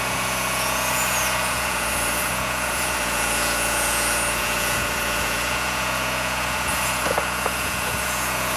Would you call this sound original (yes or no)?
no